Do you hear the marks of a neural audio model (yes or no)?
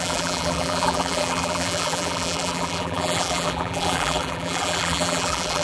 yes